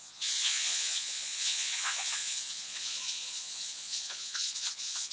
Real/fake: fake